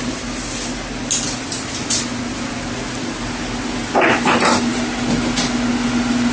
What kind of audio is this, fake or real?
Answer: real